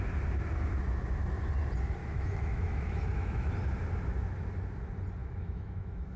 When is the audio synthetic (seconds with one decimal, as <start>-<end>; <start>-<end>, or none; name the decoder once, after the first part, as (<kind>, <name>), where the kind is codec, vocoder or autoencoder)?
2.0-3.5 (autoencoder, DAC-VAE); 5.2-6.2